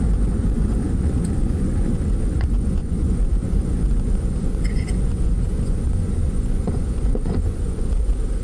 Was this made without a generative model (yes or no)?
no